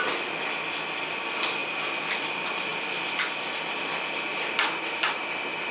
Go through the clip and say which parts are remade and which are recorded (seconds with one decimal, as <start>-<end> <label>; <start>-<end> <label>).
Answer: 0.0-5.7 recorded